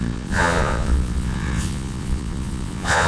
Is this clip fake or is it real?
fake